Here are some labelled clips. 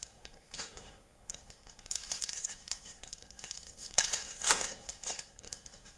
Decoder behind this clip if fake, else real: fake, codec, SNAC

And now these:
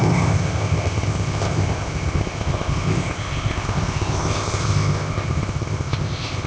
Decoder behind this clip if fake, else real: fake, codec, ZipCodec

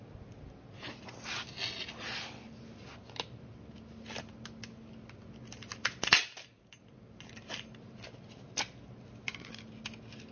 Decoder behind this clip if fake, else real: real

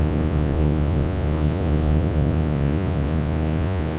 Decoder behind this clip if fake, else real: fake, vocoder, Vocos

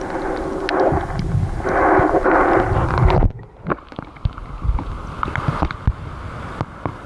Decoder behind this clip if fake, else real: real